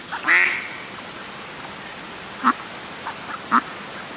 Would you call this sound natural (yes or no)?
yes